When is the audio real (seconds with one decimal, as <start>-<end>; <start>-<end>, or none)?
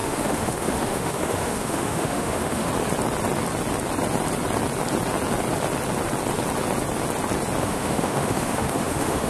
2.7-7.6